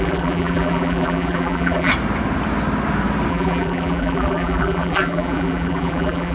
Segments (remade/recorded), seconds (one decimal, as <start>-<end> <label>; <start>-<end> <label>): 0.0-1.9 remade; 1.9-3.3 recorded; 3.3-6.3 remade